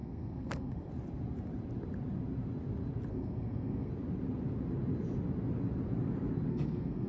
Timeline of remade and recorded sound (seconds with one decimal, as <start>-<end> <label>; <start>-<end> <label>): 0.0-0.9 remade; 0.9-3.1 recorded; 3.1-3.9 remade; 3.9-6.5 recorded; 6.5-7.1 remade